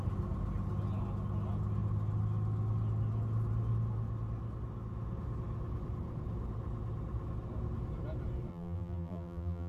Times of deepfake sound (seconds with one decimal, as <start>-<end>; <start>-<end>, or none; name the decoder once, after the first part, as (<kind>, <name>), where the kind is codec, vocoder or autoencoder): 8.5-9.7 (vocoder, BigVGAN v2)